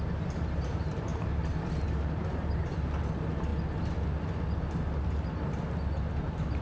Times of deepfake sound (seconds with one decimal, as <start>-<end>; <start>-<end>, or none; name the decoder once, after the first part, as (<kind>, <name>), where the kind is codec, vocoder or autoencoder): 0.0-3.5 (vocoder, BigVGAN v2); 6.0-6.6